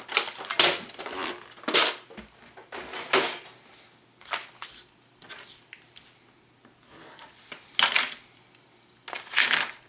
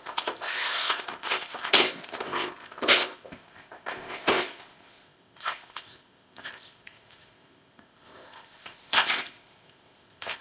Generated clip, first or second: second